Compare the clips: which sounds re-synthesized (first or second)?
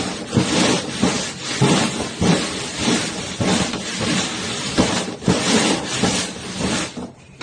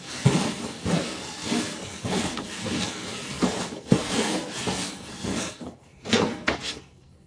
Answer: second